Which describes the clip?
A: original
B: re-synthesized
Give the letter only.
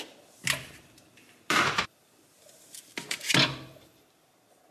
B